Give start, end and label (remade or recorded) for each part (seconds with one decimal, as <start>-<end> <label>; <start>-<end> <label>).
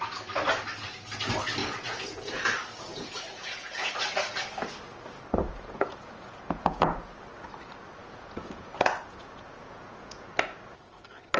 0.0-1.6 recorded; 1.6-2.3 remade; 2.3-2.9 recorded; 2.9-3.9 remade; 3.9-5.4 recorded; 5.4-7.1 remade; 7.1-8.0 recorded; 8.0-10.3 remade; 10.3-11.4 recorded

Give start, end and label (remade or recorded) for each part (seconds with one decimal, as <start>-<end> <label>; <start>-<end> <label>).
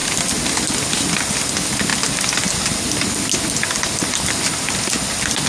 0.0-5.5 recorded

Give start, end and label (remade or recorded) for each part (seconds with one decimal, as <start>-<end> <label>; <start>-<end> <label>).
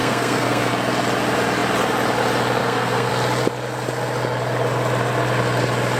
0.0-0.7 remade; 0.7-2.6 recorded; 2.6-3.1 remade; 3.1-6.0 recorded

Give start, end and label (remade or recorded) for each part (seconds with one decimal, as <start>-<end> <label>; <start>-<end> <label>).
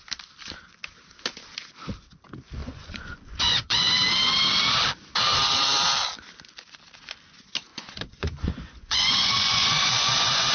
0.0-2.6 recorded; 2.6-3.9 remade; 3.9-7.7 recorded; 7.7-10.5 remade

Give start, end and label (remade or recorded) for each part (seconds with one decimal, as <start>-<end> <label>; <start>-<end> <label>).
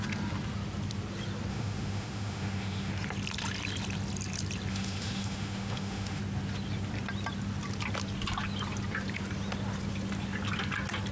0.0-1.5 recorded; 1.5-2.9 remade; 2.9-4.7 recorded; 4.7-6.2 remade; 6.2-11.1 recorded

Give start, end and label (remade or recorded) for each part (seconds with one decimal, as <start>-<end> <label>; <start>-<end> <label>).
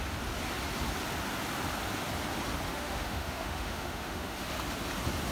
0.0-2.7 recorded; 2.7-4.5 remade; 4.5-5.3 recorded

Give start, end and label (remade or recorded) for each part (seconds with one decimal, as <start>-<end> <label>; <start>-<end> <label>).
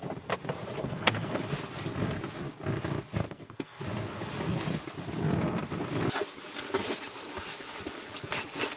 0.0-0.8 recorded; 0.8-1.4 remade; 1.4-3.2 recorded; 3.2-3.8 remade; 3.8-8.8 recorded